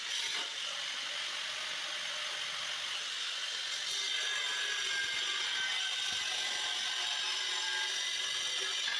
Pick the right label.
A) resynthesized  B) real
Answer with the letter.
B